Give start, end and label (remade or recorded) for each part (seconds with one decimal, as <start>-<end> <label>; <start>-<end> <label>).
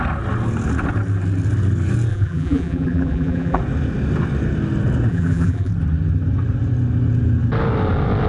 0.0-2.1 recorded; 2.1-3.6 remade; 3.6-5.1 recorded; 5.1-5.7 remade; 5.7-8.3 recorded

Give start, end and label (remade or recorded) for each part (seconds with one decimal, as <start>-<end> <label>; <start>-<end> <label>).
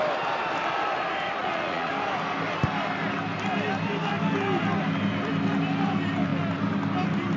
0.0-1.4 recorded; 1.4-1.9 remade; 1.9-7.4 recorded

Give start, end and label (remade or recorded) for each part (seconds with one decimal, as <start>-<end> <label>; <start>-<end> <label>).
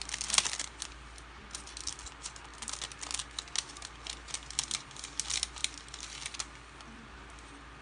0.0-7.8 recorded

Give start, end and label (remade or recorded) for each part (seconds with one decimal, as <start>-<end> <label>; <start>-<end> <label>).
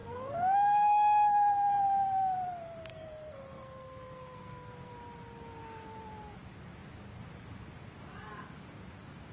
0.0-1.8 remade; 1.8-2.9 recorded; 2.9-4.9 remade; 4.9-9.3 recorded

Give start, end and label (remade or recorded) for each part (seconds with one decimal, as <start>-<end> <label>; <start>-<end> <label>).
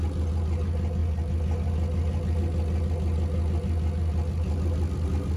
0.0-5.4 recorded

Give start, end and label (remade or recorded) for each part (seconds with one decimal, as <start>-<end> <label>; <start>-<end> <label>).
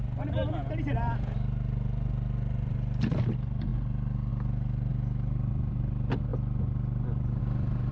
0.0-7.9 recorded